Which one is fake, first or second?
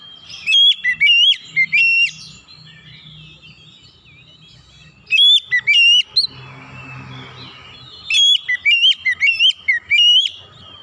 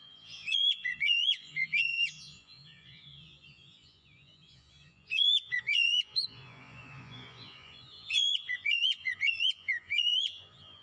second